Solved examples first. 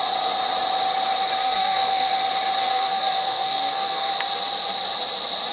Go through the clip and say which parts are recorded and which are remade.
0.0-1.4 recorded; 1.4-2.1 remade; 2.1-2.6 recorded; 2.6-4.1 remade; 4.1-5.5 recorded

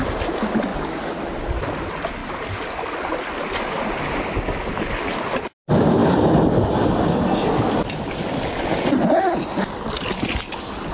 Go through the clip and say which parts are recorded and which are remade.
0.0-10.9 recorded

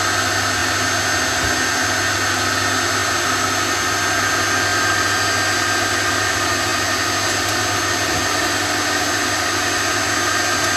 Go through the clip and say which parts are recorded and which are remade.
0.0-10.8 recorded

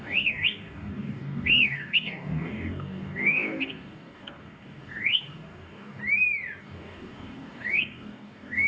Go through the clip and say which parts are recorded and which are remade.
0.0-6.0 remade; 6.0-6.6 recorded; 6.6-8.7 remade